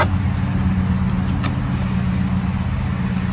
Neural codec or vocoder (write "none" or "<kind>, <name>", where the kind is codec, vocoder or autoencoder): none